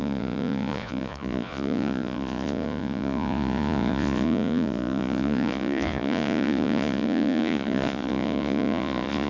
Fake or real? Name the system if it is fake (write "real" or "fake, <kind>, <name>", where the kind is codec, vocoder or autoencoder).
fake, vocoder, Vocos